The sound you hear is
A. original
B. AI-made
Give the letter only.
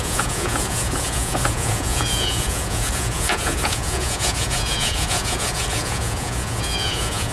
B